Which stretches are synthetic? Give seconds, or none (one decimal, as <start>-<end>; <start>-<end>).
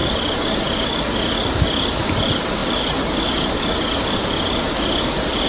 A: none